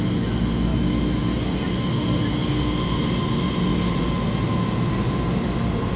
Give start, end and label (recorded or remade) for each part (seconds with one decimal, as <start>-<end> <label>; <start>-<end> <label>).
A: 0.0-0.7 recorded; 0.7-1.2 remade; 1.2-6.0 recorded